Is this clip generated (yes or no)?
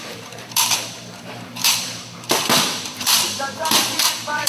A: yes